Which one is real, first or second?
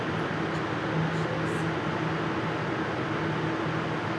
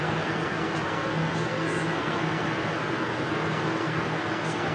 first